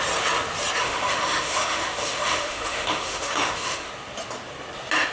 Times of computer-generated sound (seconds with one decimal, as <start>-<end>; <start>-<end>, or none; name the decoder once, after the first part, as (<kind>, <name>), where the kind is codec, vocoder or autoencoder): 0.8-3.9 (autoencoder, DAC-VAE)